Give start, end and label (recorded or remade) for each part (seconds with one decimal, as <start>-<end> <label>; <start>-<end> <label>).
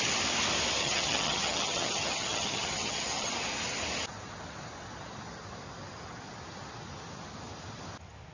0.0-0.8 recorded; 0.8-3.3 remade; 3.3-8.3 recorded